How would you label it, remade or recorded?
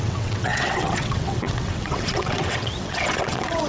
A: remade